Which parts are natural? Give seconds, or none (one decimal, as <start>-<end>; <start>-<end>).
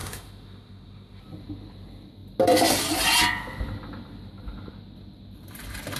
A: 1.2-6.0